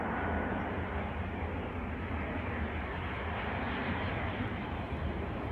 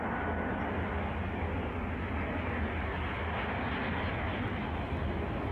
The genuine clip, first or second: second